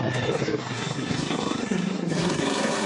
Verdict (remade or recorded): remade